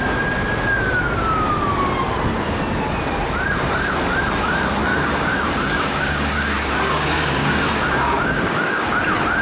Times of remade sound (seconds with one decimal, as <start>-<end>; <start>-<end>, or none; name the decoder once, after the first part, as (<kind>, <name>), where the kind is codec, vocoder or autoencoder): 4.9-9.0 (codec, DAC)

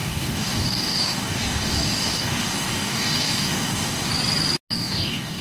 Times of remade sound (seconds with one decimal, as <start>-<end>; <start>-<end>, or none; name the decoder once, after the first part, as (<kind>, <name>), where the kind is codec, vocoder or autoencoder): 0.0-4.1 (codec, DAC); 4.7-5.4

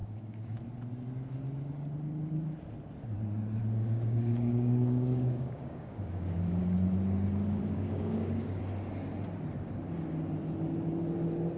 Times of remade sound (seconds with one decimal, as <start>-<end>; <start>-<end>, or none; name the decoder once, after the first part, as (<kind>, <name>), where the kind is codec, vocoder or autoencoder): 0.0-0.6 (codec, DAC); 3.6-6.6; 7.6-8.6

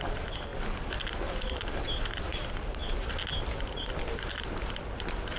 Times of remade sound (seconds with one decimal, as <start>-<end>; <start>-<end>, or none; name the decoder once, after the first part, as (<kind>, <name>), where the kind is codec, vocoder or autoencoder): none

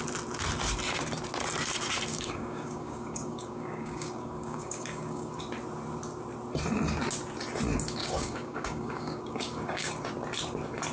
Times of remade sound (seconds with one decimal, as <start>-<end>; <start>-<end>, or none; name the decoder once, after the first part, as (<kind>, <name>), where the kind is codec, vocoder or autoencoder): 2.1-5.4 (codec, DAC); 8.0-9.9